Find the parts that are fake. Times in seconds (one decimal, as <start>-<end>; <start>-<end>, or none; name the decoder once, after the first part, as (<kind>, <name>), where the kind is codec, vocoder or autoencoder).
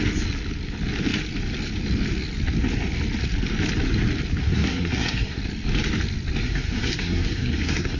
4.4-5.4 (codec, SNAC); 6.4-8.0